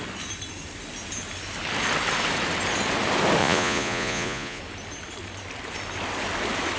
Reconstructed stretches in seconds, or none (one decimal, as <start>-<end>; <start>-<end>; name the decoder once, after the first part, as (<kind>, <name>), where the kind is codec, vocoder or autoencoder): 3.4-4.6 (vocoder, Vocos)